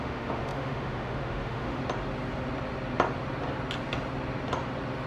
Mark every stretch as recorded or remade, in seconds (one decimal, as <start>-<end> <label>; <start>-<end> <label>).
0.0-1.8 remade; 1.8-5.1 recorded